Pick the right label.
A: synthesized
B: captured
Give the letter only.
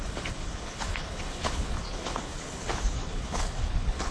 A